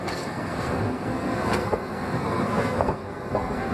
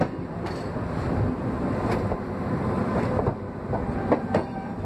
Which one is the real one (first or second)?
second